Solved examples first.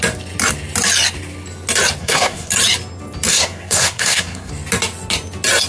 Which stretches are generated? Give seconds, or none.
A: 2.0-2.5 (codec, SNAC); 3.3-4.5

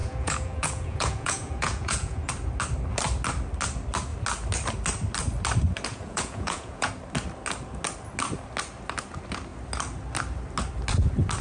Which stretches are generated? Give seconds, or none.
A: 0.0-2.3 (vocoder, Vocos); 5.9-6.9

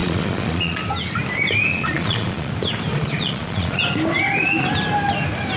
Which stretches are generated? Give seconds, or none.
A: 0.0-0.8 (vocoder, Vocos); 1.7-2.5; 2.9-3.8

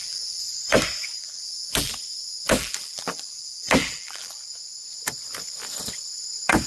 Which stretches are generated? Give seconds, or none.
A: 0.0-0.6 (vocoder, BigVGAN v2); 1.2-1.9; 2.6-4.4

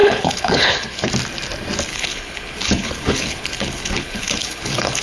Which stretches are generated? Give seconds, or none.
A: 0.0-1.1 (codec, HILCodec); 1.9-5.0